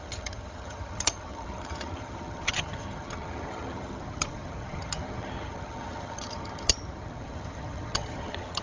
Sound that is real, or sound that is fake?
fake